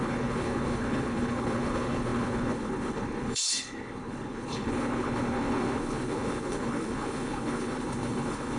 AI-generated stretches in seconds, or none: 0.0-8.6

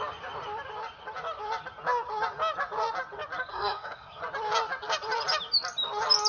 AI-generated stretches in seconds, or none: 3.5-4.2